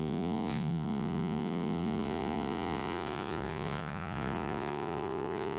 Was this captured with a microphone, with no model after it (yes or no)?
no